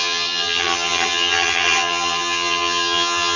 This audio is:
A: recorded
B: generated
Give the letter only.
B